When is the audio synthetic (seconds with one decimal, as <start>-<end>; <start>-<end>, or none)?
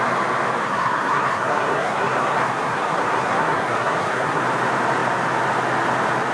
0.6-4.4